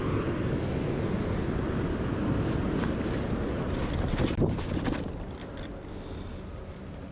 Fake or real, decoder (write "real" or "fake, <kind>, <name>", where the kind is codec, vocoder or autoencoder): real